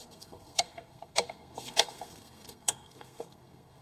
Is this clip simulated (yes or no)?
yes